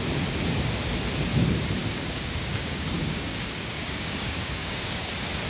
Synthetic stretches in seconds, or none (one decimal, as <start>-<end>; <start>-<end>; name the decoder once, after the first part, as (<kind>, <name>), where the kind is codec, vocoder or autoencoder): 1.8-5.1 (codec, DAC)